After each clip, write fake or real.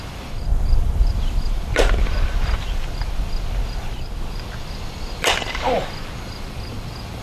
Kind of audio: fake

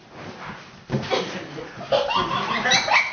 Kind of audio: real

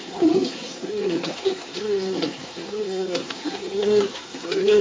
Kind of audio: fake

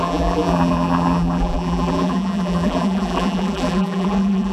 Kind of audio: fake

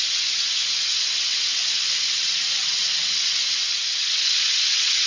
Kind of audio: fake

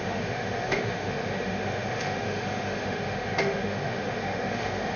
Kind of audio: fake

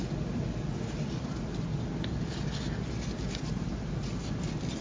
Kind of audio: real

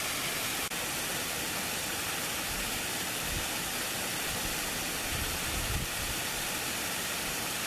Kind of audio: real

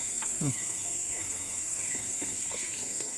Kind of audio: fake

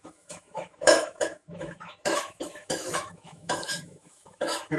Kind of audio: fake